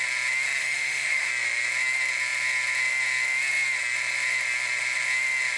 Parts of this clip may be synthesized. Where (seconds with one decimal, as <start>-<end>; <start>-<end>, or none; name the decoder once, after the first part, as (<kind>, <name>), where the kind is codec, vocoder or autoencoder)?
0.6-1.3 (autoencoder, DAC-VAE)